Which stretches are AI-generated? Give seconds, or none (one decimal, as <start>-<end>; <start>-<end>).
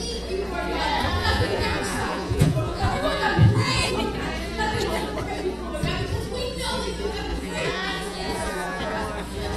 1.2-3.9; 7.3-9.0